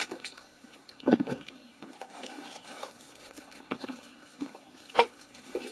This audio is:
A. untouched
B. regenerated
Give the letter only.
B